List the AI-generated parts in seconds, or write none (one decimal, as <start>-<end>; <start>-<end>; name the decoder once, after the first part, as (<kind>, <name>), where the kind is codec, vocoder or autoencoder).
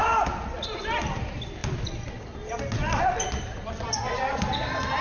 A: none